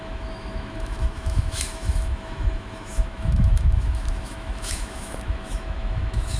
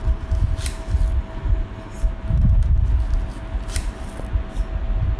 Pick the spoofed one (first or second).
first